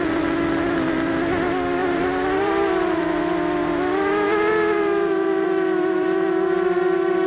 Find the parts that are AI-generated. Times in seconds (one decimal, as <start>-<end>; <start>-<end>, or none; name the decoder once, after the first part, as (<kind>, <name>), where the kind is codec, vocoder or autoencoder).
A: 1.8-3.0 (vocoder, BigVGAN v2); 3.6-7.3